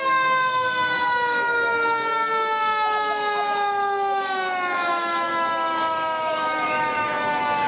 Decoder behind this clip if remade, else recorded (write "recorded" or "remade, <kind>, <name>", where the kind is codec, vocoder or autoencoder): remade, autoencoder, DAC-VAE